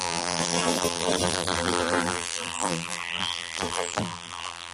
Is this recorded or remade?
remade